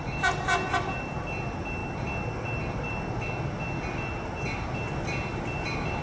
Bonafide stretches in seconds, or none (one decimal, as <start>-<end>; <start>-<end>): 0.0-6.0